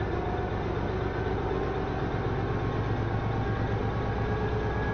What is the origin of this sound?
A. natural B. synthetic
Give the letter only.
A